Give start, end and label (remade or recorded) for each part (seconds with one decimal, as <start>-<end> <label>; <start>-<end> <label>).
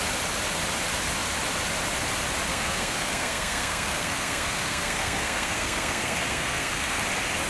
0.0-2.5 recorded; 2.5-7.0 remade; 7.0-7.5 recorded